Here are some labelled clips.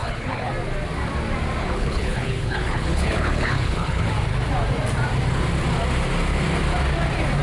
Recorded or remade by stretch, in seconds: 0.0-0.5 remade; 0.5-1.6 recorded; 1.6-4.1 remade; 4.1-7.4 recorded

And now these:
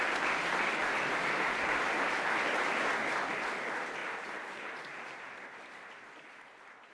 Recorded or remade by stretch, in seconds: 0.0-0.8 recorded; 0.8-2.9 remade; 2.9-4.0 recorded; 4.0-6.1 remade; 6.1-6.9 recorded

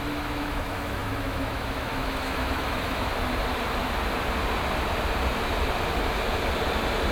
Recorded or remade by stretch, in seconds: 0.0-3.1 remade; 3.1-7.1 recorded

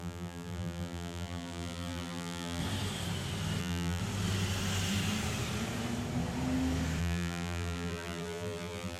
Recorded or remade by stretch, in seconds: 0.0-2.6 remade; 2.6-3.6 recorded; 3.6-4.0 remade; 4.0-7.0 recorded; 7.0-9.0 remade